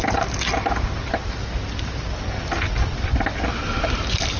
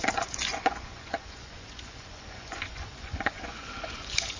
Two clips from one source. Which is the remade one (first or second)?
second